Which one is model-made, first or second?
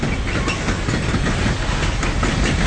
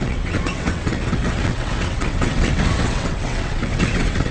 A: second